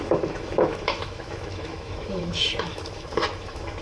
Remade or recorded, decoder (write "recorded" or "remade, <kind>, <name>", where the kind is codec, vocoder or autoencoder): remade, autoencoder, DAC-VAE